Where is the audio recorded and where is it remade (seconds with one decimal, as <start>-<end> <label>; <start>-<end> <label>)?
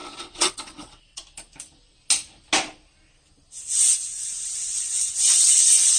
0.0-1.2 remade; 1.2-4.8 recorded; 4.8-6.0 remade